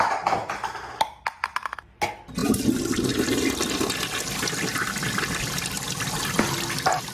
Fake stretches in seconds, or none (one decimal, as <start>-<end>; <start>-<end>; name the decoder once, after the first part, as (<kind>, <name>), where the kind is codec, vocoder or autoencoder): 2.4-3.0 (vocoder, BigVGAN v2); 4.7-5.2

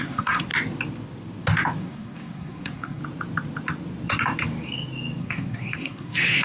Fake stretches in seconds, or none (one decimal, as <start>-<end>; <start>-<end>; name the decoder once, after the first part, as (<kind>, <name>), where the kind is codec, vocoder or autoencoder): 0.0-0.5 (codec, SNAC); 1.8-3.0; 5.2-6.4

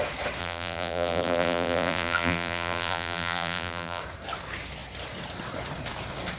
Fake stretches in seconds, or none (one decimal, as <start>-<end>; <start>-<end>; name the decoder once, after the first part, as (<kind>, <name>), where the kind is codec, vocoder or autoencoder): 0.4-4.0 (vocoder, BigVGAN v2)

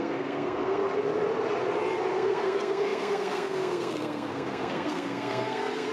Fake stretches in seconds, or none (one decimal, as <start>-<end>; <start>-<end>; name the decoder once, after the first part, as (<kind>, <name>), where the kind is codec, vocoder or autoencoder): 0.0-0.8 (codec, SNAC); 2.1-5.9

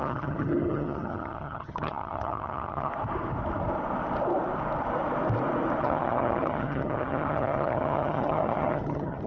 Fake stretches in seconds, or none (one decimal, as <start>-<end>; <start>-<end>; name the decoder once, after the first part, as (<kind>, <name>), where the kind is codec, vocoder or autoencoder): 0.0-2.9 (vocoder, HiFi-GAN); 5.8-9.3

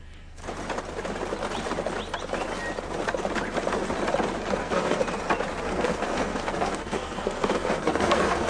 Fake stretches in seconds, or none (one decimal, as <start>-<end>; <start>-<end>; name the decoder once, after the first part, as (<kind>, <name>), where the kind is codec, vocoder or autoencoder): 0.0-0.4 (codec, SNAC); 4.5-5.0; 5.6-8.5